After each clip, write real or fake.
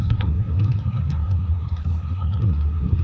fake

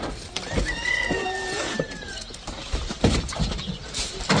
real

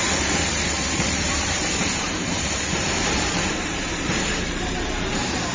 fake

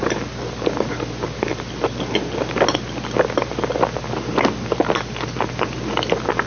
real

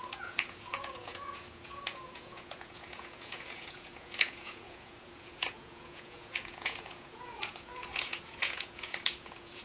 fake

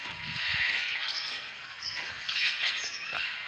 fake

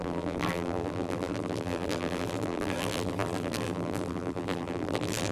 fake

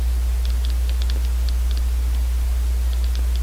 real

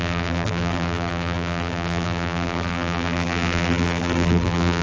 fake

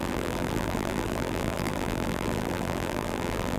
fake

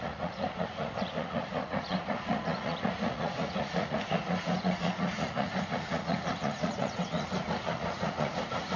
fake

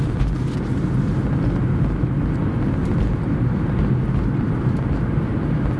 real